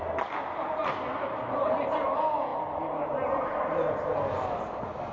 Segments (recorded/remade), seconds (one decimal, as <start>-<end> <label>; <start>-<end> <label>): 0.0-5.1 recorded